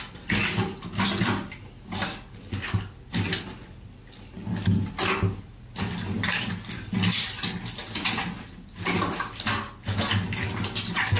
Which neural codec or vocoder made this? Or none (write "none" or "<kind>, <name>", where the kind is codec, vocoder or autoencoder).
none